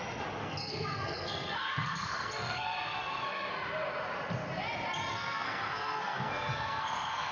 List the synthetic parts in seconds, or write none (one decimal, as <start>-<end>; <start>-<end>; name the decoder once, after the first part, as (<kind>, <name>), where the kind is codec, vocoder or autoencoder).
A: 0.4-3.5 (codec, SNAC); 5.1-7.3